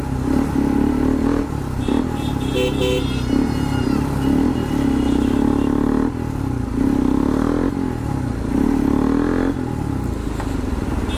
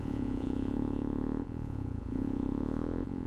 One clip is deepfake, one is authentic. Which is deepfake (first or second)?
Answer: second